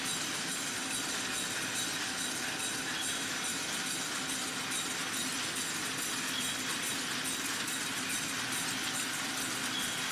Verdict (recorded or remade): recorded